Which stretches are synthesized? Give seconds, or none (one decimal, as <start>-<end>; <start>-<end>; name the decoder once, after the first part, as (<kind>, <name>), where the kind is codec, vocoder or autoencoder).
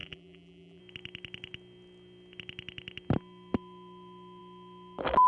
0.0-0.8 (vocoder, BigVGAN v2)